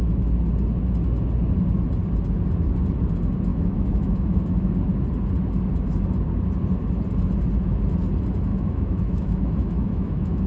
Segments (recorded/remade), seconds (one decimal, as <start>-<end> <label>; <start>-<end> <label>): 0.0-3.5 recorded; 3.5-4.7 remade; 4.7-8.5 recorded; 8.5-10.5 remade